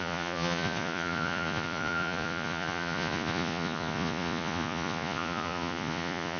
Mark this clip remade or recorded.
remade